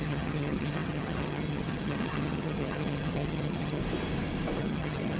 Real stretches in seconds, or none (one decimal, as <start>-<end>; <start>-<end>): 3.8-4.6